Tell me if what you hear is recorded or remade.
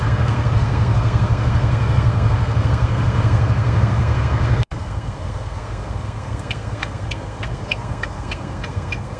remade